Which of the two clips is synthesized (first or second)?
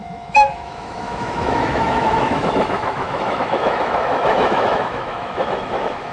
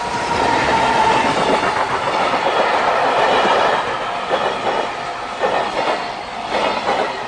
first